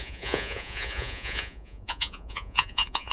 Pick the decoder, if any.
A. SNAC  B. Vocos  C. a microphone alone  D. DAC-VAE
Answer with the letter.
B